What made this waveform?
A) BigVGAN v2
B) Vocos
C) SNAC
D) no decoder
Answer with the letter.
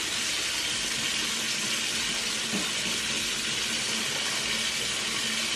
D